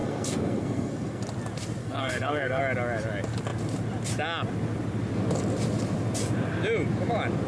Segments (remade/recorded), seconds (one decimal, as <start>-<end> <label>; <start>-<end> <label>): 0.0-1.2 remade; 1.2-1.8 recorded; 1.8-2.6 remade; 2.6-7.5 recorded